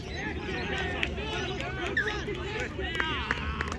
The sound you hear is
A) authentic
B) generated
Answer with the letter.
A